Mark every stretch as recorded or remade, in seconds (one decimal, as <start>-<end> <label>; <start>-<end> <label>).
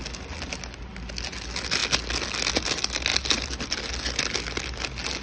0.0-5.2 recorded